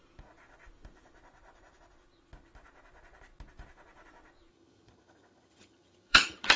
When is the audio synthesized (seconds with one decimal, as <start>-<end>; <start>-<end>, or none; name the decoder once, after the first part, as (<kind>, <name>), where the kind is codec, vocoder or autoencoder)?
4.5-6.6 (vocoder, HiFi-GAN)